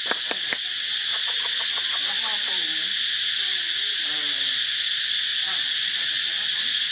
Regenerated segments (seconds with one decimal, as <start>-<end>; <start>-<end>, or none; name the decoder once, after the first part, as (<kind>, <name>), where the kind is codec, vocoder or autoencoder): none